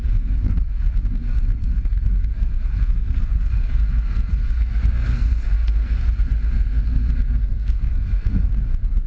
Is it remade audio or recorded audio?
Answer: remade